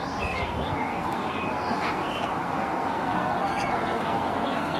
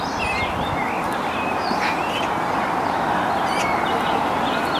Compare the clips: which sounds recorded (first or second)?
second